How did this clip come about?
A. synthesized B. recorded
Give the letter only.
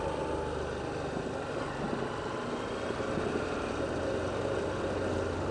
B